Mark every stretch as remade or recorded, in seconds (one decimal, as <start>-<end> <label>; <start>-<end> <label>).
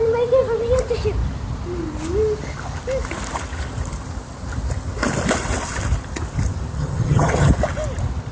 0.0-6.8 recorded; 6.8-7.5 remade; 7.5-8.3 recorded